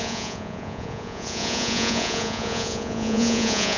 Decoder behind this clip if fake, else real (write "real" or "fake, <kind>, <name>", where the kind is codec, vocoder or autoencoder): fake, vocoder, Vocos